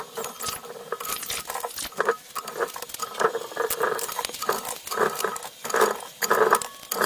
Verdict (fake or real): real